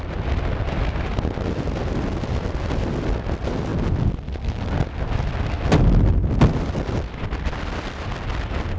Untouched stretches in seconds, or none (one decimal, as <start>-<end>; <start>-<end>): 0.0-8.8